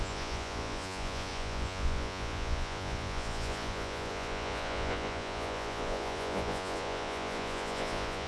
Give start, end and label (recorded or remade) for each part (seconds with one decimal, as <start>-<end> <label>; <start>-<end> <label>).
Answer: 0.0-8.3 remade